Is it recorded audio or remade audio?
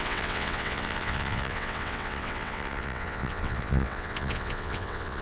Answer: remade